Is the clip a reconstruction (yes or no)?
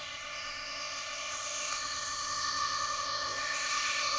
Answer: yes